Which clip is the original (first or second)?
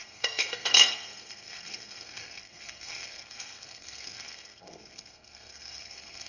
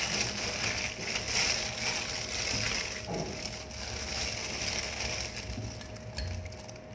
second